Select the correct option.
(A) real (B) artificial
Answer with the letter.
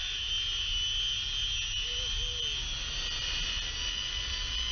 A